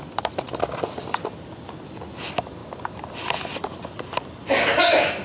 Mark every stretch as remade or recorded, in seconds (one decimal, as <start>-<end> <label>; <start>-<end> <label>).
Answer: 0.0-5.2 recorded